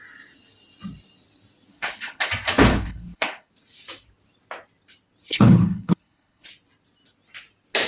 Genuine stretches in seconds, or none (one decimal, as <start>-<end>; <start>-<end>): 0.0-1.7; 2.3-2.7; 3.5-5.3; 6.5-7.9